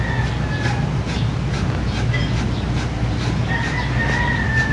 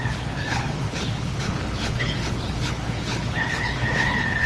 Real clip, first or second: first